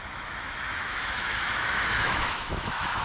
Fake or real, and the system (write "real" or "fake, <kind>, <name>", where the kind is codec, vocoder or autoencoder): fake, autoencoder, DAC-VAE